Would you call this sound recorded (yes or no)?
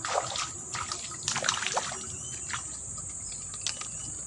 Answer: yes